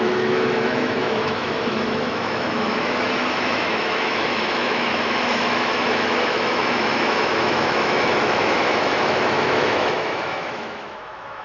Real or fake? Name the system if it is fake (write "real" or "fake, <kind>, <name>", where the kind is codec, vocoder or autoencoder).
fake, autoencoder, DAC-VAE